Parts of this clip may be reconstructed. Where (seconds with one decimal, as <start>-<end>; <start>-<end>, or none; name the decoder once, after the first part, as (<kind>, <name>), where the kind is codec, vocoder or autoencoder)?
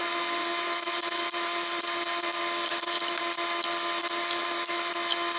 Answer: 0.0-3.2 (vocoder, BigVGAN v2); 4.0-4.9